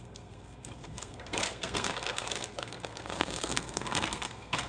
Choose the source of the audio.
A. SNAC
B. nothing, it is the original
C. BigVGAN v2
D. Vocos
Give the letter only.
A